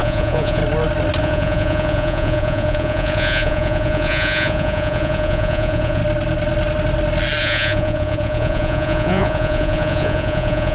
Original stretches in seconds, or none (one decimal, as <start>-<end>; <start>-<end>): 0.6-1.2; 6.0-7.4